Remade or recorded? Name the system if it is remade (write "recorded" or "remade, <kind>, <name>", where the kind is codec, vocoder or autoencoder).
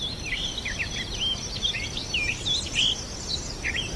recorded